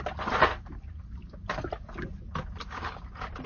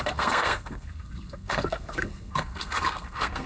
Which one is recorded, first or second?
first